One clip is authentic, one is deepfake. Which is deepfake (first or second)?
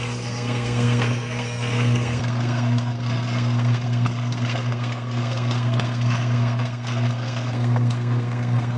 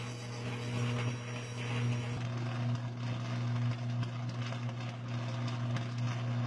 first